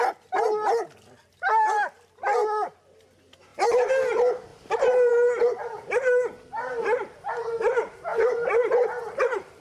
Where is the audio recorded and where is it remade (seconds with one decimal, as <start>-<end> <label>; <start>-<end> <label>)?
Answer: 0.0-3.5 recorded; 3.5-4.0 remade; 4.0-4.5 recorded; 4.5-5.1 remade; 5.1-8.1 recorded; 8.1-8.7 remade; 8.7-9.6 recorded